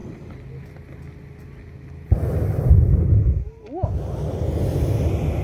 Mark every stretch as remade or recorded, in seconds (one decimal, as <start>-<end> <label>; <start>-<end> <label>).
0.0-5.4 recorded